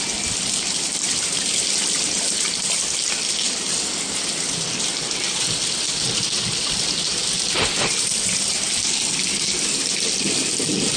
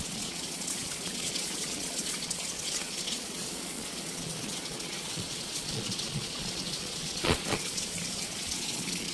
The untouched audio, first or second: first